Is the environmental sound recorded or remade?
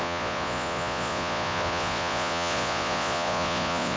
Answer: remade